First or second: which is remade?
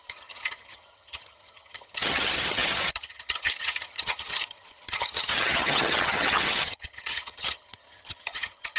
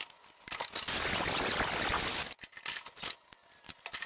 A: first